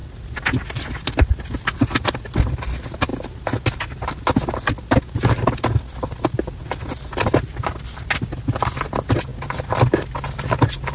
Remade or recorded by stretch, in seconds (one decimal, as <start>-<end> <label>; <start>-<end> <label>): 0.0-10.9 recorded